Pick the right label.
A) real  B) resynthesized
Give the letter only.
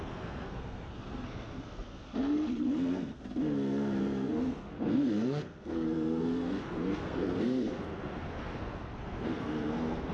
B